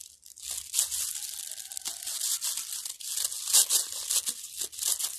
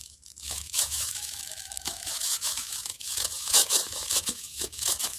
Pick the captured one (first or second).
first